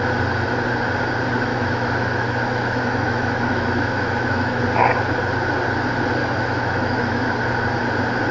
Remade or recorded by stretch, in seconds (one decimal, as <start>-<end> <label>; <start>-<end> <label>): 0.0-1.5 recorded; 1.5-4.6 remade; 4.6-6.2 recorded; 6.2-7.3 remade; 7.3-8.3 recorded